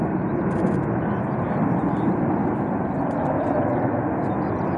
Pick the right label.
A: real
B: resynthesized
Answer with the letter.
A